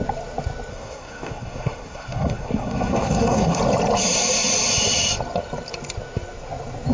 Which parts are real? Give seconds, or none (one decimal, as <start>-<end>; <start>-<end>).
0.0-0.7; 3.6-6.9